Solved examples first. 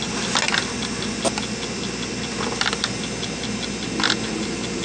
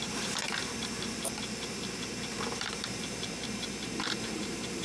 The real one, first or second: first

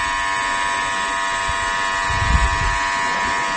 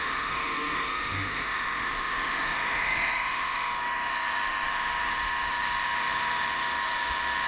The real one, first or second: first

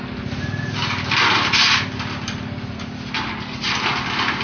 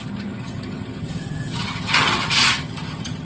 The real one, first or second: first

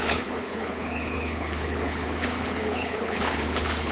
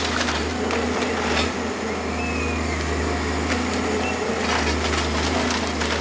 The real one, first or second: second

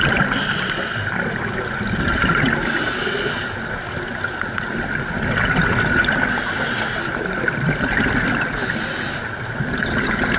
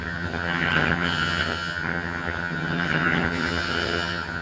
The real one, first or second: first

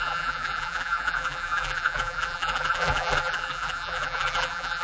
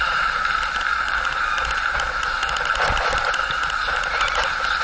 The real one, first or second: second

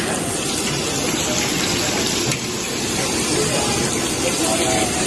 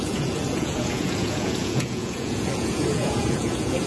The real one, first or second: first